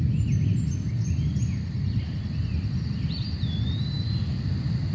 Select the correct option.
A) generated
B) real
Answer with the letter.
B